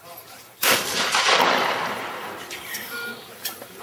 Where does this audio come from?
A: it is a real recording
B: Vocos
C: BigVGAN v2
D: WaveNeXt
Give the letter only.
C